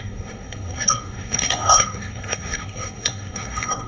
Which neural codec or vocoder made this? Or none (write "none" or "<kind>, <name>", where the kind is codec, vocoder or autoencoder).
codec, SNAC